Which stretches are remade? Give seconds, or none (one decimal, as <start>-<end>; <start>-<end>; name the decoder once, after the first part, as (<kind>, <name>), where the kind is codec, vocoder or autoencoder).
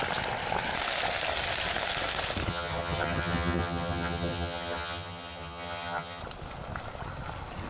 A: 2.5-6.2 (vocoder, HiFi-GAN)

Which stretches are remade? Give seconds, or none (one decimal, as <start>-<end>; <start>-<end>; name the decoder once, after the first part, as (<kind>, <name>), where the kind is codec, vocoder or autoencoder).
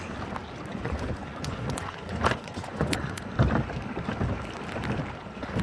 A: 0.7-3.3 (vocoder, Vocos)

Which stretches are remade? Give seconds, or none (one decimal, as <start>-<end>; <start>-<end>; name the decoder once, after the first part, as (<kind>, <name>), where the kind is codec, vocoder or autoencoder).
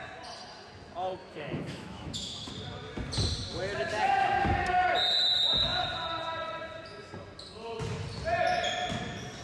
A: 1.2-2.5 (autoencoder, DAC-VAE)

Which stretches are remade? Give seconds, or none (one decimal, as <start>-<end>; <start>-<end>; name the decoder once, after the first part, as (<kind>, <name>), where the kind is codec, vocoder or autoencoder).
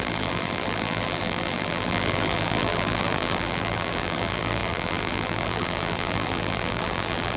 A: 0.0-7.4 (vocoder, BigVGAN v2)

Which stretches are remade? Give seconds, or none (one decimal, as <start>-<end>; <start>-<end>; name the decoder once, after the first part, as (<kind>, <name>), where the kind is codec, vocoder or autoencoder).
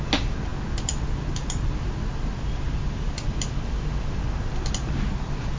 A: none